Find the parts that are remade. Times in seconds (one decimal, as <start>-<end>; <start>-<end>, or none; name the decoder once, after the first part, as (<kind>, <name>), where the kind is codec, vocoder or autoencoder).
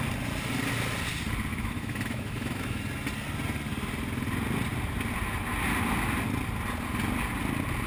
1.5-2.8 (autoencoder, DAC-VAE)